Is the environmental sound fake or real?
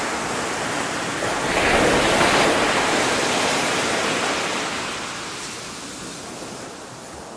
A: real